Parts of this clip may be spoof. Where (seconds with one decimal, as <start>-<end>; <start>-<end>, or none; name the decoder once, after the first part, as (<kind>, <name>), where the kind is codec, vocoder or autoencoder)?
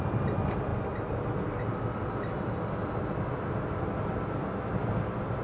none